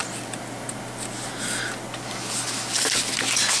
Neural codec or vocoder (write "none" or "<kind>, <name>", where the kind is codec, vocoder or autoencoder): none